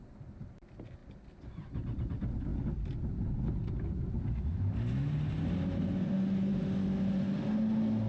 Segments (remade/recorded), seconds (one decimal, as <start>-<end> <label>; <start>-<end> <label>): 0.0-8.1 recorded